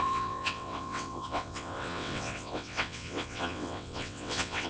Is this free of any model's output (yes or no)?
no